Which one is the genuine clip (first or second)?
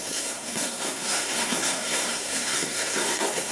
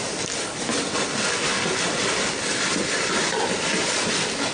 second